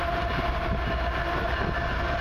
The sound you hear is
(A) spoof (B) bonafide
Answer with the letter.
B